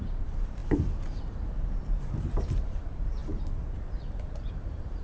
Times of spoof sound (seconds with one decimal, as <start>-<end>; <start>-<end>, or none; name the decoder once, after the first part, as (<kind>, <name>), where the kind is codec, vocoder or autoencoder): 0.0-5.0 (vocoder, BigVGAN v2)